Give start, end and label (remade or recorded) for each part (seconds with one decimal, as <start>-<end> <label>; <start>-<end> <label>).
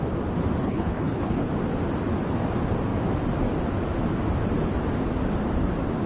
0.0-0.6 recorded; 0.6-1.5 remade; 1.5-6.1 recorded